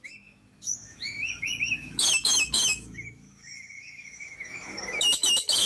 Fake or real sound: fake